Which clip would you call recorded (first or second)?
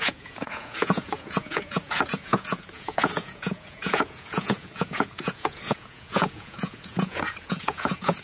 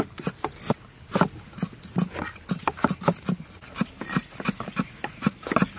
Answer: second